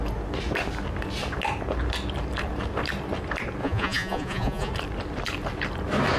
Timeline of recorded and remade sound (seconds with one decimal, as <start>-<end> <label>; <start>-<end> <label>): 0.0-3.6 recorded; 3.6-4.7 remade; 4.7-6.2 recorded